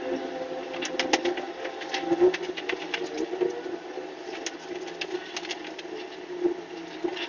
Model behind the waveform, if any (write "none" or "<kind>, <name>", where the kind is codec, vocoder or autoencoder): none